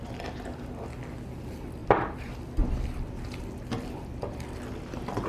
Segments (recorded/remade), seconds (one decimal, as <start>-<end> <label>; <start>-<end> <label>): 0.0-1.8 recorded; 1.8-3.1 remade; 3.1-5.3 recorded